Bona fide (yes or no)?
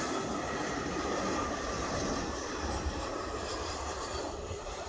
no